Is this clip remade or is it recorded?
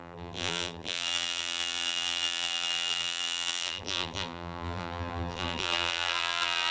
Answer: remade